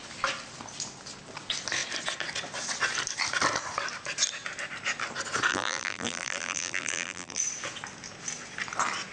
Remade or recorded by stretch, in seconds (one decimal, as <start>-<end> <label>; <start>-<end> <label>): 0.0-5.5 recorded; 5.5-7.4 remade; 7.4-9.1 recorded